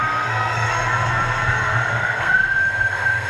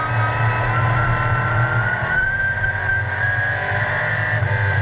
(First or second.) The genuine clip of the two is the second